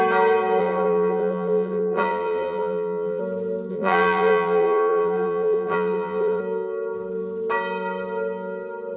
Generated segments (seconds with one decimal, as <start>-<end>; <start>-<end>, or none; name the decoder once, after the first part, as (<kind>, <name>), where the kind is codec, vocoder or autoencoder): 0.6-3.2 (vocoder, BigVGAN v2); 3.7-6.4